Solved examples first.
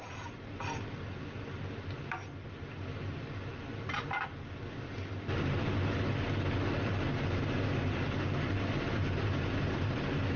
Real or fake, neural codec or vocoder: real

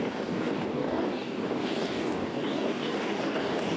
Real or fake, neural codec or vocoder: fake, codec, DAC